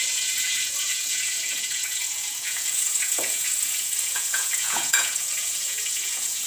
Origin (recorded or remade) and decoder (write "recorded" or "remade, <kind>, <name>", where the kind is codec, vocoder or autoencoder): remade, vocoder, Vocos